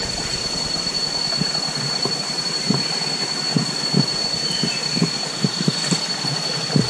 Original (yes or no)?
yes